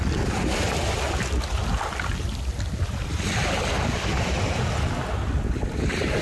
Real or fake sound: real